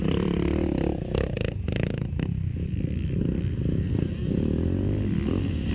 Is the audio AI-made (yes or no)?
yes